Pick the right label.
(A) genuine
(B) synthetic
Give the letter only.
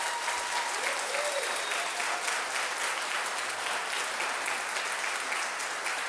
A